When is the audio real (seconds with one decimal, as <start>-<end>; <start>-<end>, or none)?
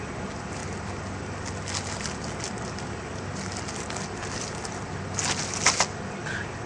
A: 0.0-6.7